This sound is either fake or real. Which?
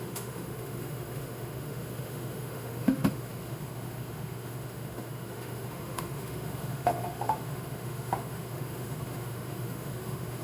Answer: fake